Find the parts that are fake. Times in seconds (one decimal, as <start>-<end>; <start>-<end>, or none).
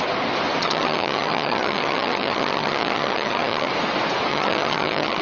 0.6-3.7; 4.3-5.2